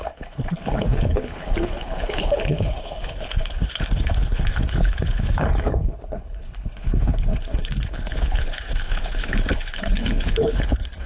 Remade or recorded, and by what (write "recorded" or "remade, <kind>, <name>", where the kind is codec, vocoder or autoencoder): remade, codec, HILCodec